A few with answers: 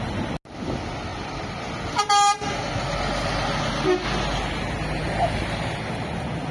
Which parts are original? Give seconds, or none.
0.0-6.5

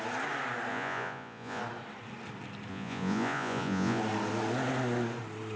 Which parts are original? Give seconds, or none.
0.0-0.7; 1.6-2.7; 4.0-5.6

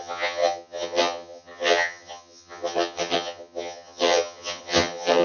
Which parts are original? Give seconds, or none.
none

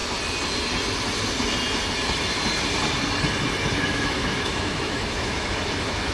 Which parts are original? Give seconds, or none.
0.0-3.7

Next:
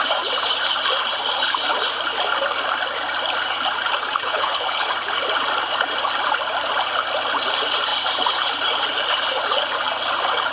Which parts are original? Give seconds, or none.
0.0-4.2; 4.9-10.5